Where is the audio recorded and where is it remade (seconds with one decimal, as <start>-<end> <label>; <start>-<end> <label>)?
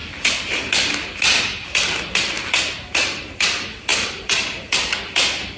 0.0-3.9 recorded; 3.9-5.1 remade; 5.1-5.6 recorded